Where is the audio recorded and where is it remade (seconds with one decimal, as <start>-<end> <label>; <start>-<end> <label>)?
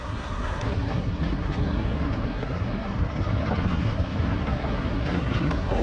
0.0-5.8 remade